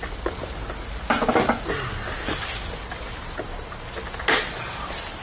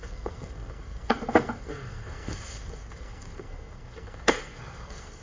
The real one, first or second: first